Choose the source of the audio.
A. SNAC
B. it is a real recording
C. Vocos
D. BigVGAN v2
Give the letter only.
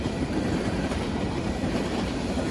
D